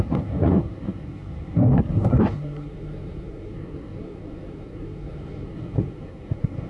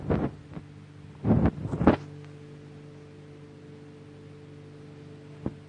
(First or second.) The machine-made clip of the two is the first